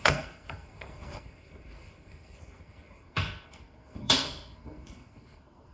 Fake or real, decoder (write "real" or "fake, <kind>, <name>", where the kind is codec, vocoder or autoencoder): fake, codec, SNAC